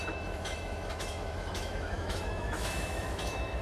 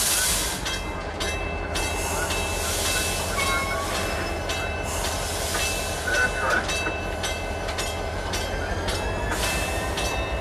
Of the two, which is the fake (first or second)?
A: first